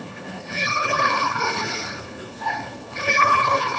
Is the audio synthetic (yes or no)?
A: yes